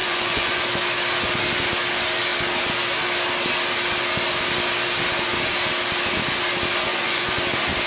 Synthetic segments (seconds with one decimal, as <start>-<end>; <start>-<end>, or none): 0.0-0.6; 6.9-7.4